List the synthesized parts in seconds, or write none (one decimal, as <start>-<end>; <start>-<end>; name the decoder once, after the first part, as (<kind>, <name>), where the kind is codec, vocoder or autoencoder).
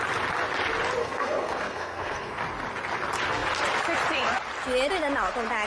1.0-2.4 (codec, SNAC)